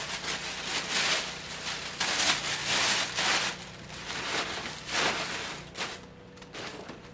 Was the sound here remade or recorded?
recorded